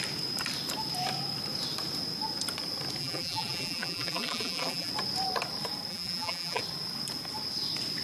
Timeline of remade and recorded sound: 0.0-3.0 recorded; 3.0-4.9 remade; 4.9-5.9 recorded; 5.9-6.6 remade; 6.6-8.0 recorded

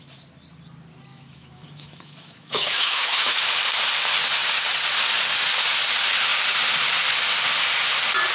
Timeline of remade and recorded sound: 0.0-1.1 recorded; 1.1-3.4 remade; 3.4-8.3 recorded

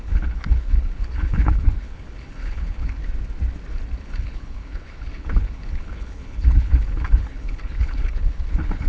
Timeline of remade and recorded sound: 0.0-3.0 remade; 3.0-4.0 recorded; 4.0-8.9 remade

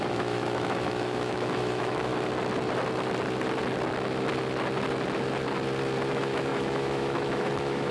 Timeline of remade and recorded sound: 0.0-2.1 remade; 2.1-6.1 recorded; 6.1-7.9 remade